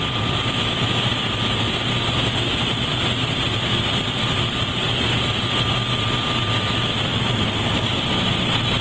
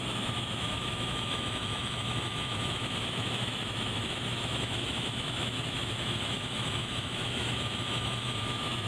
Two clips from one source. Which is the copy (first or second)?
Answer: second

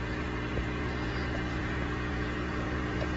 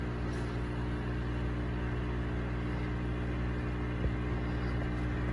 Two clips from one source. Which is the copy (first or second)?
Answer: first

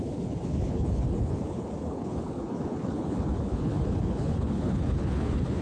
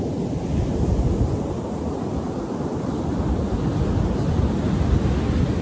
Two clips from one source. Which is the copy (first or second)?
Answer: first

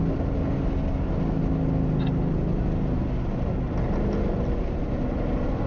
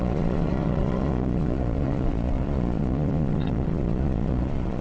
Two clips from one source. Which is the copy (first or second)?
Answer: second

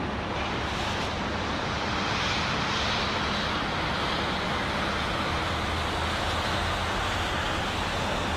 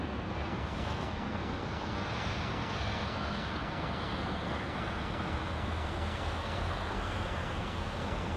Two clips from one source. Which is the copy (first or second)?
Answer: second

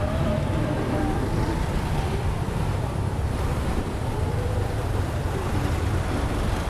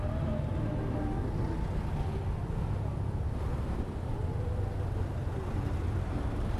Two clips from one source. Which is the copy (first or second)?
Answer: first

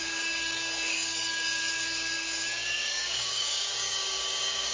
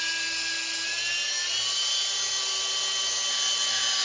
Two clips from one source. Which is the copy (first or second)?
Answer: first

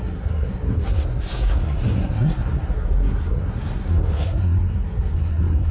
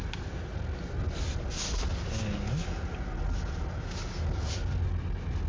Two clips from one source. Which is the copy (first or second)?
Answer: first